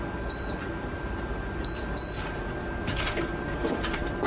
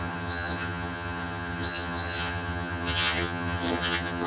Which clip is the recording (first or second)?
first